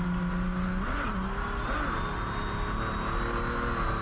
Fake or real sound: real